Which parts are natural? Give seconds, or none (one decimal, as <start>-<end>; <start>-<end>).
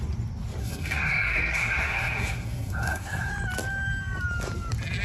0.0-0.6; 3.3-5.0